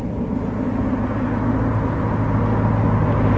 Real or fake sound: real